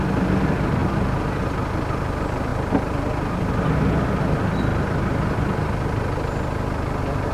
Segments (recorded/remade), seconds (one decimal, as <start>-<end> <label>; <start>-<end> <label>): 0.0-0.8 recorded; 0.8-1.4 remade; 1.4-2.5 recorded; 2.5-3.5 remade; 3.5-4.7 recorded; 4.7-5.4 remade; 5.4-7.3 recorded